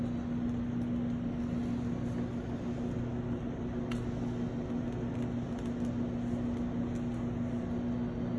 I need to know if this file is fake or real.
real